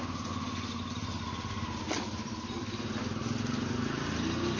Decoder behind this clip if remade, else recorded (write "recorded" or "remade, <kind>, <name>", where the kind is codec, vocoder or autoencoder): recorded